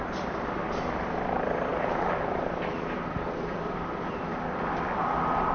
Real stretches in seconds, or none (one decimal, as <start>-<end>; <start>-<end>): none